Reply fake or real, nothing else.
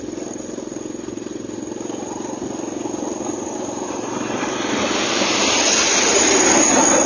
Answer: real